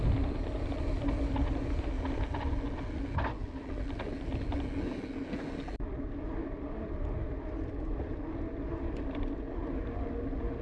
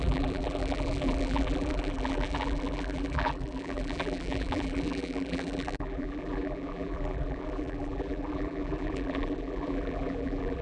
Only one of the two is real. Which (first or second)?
first